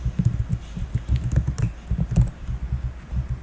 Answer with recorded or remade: recorded